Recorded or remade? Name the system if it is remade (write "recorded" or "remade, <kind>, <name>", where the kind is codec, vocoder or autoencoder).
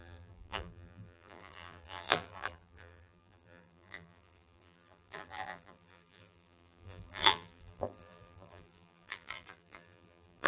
remade, vocoder, BigVGAN v2